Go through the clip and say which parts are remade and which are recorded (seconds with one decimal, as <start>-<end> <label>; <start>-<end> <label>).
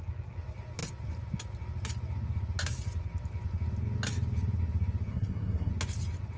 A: 0.0-5.1 recorded; 5.1-5.7 remade; 5.7-6.4 recorded